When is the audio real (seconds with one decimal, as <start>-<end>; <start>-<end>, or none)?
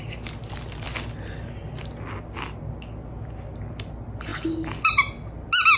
0.0-5.8